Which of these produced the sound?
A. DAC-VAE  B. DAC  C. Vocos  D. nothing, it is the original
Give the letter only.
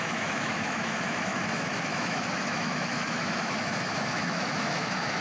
A